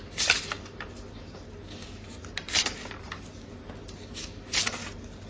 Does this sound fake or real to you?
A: real